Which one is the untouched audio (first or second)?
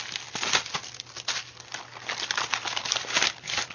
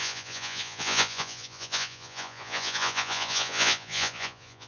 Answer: first